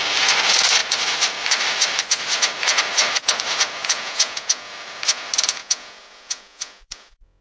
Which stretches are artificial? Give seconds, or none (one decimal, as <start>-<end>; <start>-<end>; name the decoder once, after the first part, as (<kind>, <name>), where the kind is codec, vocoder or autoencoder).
3.8-4.7 (vocoder, Vocos); 5.6-7.4